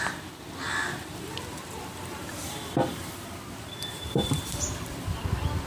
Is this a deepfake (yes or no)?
yes